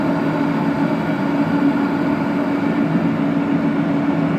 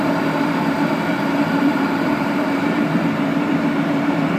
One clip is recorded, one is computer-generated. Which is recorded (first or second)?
first